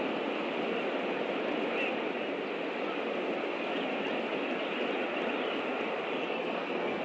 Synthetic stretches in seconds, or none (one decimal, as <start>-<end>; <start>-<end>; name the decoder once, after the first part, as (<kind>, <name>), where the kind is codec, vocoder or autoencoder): 6.2-7.0 (codec, SNAC)